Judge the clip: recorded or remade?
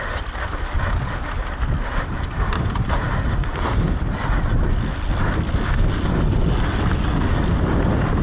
recorded